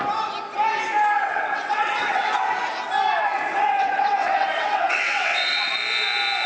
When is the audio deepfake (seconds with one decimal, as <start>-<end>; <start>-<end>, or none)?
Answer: 1.2-2.3; 3.5-5.7

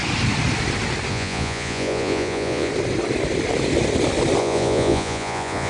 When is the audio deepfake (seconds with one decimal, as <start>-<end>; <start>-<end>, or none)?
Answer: 1.1-2.7; 4.4-5.7

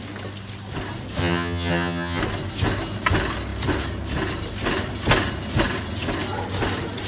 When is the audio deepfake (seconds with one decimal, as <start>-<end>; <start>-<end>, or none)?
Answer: 1.2-2.2